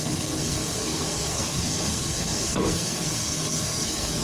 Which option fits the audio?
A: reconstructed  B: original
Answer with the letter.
A